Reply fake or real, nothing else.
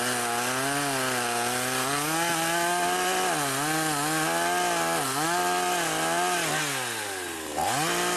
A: real